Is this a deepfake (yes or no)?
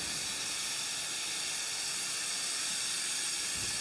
no